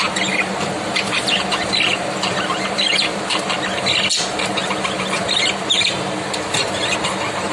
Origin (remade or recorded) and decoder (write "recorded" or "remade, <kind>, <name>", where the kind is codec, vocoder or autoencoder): recorded